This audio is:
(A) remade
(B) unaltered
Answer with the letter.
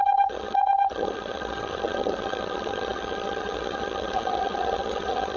A